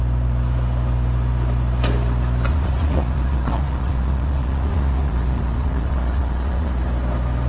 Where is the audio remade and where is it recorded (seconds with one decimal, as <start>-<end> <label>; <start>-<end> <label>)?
0.0-2.5 recorded; 2.5-6.7 remade; 6.7-7.5 recorded